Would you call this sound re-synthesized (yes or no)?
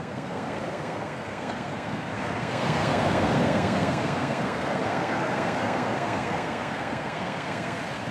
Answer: yes